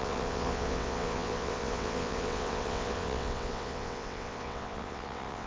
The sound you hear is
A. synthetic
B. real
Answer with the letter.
A